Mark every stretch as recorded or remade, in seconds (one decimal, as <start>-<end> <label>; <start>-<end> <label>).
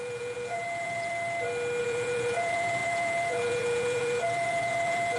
0.0-1.1 remade; 1.1-1.8 recorded; 1.8-5.2 remade